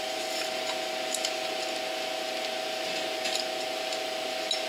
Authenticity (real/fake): real